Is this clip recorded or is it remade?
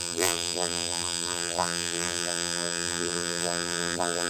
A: remade